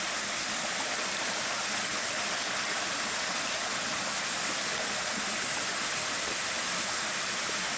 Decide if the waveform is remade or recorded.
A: recorded